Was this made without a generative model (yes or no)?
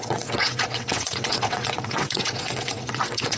no